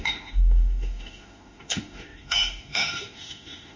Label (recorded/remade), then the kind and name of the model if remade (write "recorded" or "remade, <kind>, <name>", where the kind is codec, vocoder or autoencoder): remade, autoencoder, DAC-VAE